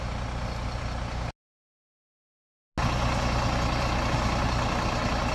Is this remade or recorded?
recorded